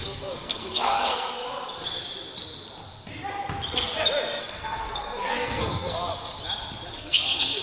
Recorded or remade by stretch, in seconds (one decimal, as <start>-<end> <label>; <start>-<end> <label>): 0.0-1.4 remade; 1.4-4.4 recorded; 4.4-6.1 remade; 6.1-6.9 recorded; 6.9-7.6 remade